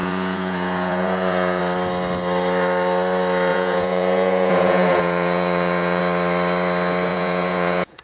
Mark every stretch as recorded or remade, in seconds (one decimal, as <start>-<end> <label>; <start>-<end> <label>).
0.0-1.6 remade; 1.6-3.5 recorded; 3.5-6.0 remade; 6.0-7.1 recorded; 7.1-8.0 remade